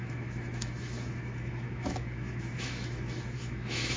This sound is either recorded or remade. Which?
remade